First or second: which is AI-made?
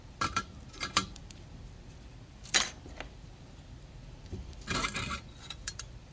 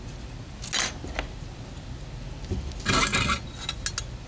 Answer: first